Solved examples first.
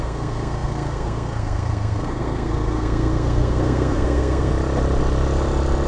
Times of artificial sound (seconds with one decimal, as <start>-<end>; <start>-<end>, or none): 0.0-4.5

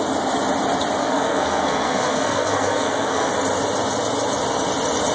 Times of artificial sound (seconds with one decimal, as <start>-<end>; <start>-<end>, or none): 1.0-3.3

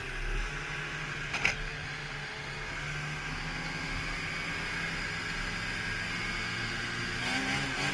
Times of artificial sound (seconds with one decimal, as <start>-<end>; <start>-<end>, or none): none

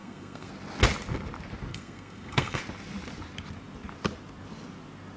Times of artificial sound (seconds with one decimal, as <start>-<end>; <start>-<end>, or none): 0.0-0.5; 1.7-2.6

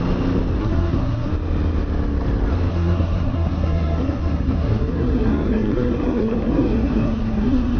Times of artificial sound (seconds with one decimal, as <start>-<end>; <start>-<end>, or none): 0.6-1.3; 2.7-7.8

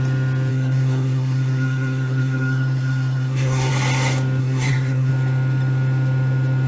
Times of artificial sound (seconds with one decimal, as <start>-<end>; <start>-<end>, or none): 0.5-3.7; 4.4-5.1